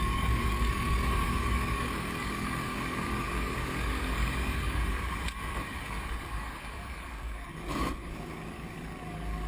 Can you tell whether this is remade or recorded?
remade